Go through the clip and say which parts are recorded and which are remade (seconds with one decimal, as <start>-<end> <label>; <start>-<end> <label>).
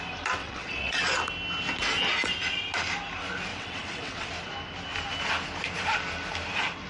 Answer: 0.0-0.4 recorded; 0.4-1.0 remade; 1.0-3.5 recorded; 3.5-4.3 remade; 4.3-6.9 recorded